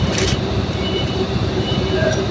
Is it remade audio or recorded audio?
remade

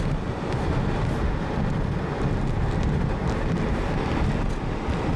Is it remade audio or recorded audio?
recorded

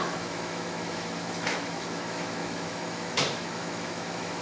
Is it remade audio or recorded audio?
remade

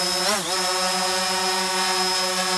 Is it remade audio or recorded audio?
recorded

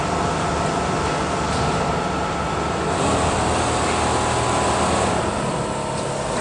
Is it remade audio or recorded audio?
recorded